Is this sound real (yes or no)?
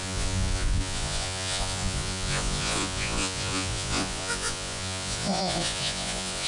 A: no